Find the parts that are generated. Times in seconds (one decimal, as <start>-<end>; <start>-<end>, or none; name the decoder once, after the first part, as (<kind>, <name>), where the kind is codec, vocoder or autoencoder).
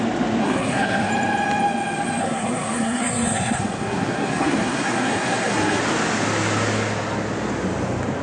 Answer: 0.4-1.1 (codec, SNAC); 2.2-5.8